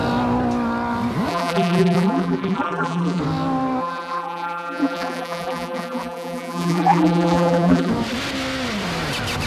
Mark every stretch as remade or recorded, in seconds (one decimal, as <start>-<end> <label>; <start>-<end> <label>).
0.0-1.3 recorded; 1.3-3.2 remade; 3.2-3.8 recorded; 3.8-7.9 remade; 7.9-9.5 recorded